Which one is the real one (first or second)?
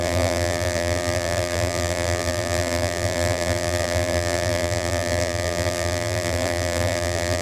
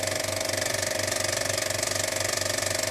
second